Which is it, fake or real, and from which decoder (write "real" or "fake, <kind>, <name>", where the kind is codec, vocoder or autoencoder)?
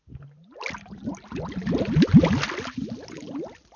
real